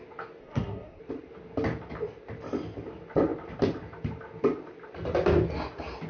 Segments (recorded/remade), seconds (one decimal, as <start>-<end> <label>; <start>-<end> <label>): 0.0-0.4 recorded; 0.4-1.0 remade; 1.0-6.1 recorded